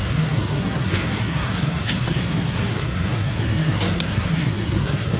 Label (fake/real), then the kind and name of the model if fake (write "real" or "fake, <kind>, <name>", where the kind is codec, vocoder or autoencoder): fake, codec, SNAC